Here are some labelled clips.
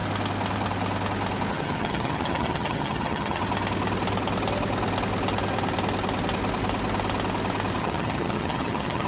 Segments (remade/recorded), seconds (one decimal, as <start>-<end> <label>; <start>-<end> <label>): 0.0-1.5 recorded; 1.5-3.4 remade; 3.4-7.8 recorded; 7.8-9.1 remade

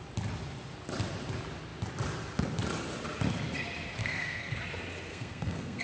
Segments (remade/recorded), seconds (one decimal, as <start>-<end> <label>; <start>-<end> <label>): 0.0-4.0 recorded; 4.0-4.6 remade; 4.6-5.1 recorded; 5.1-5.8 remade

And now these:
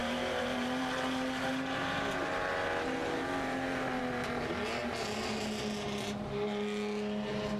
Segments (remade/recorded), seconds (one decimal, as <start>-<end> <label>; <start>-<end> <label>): 0.0-2.5 remade; 2.5-3.0 recorded; 3.0-4.0 remade; 4.0-7.6 recorded

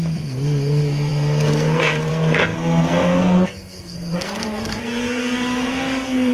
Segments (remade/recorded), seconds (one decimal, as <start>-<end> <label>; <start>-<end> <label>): 0.0-6.3 remade

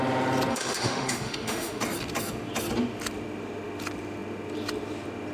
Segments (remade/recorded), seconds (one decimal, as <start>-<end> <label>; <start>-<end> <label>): 0.0-0.5 recorded; 0.5-1.8 remade; 1.8-5.3 recorded

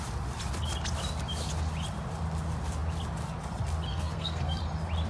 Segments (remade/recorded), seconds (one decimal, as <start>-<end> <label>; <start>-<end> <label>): 0.0-3.9 recorded; 3.9-4.6 remade; 4.6-5.1 recorded

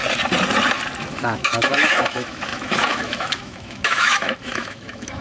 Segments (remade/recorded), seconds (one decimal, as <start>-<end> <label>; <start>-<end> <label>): 0.0-1.1 recorded; 1.1-5.2 remade

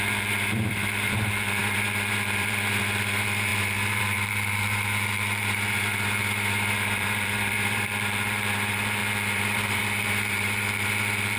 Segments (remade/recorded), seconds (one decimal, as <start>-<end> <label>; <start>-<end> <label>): 0.0-11.4 remade